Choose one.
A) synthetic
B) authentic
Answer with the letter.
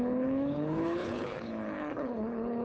A